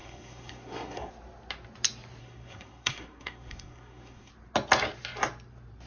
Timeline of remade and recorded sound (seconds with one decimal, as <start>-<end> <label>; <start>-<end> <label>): 0.0-1.1 remade; 1.1-2.2 recorded; 2.2-4.3 remade; 4.3-5.9 recorded

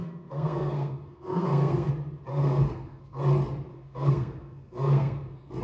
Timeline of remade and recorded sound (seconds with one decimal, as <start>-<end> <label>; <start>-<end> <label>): 0.0-1.9 remade; 1.9-2.3 recorded; 2.3-3.2 remade; 3.2-3.7 recorded; 3.7-5.6 remade

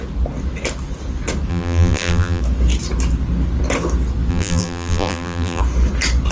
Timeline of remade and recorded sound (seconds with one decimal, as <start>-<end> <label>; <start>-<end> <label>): 0.0-1.5 recorded; 1.5-2.4 remade; 2.4-4.3 recorded; 4.3-5.6 remade; 5.6-6.3 recorded

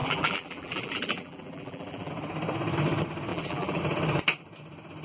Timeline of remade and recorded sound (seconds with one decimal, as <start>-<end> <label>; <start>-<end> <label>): 0.0-2.1 remade; 2.1-3.3 recorded; 3.3-3.8 remade; 3.8-5.0 recorded

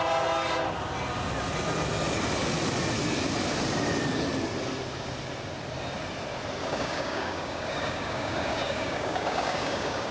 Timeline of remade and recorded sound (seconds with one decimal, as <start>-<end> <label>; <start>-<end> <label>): 0.0-6.6 recorded; 6.6-10.1 remade

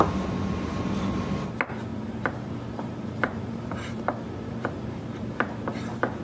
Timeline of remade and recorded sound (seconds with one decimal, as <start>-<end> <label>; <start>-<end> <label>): 0.0-1.9 recorded; 1.9-5.6 remade; 5.6-6.2 recorded